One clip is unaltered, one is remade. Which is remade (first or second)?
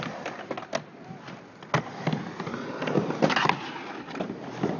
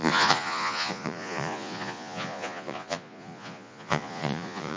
second